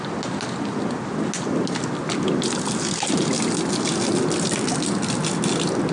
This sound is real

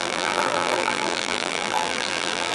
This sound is fake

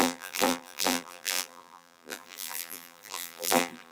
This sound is fake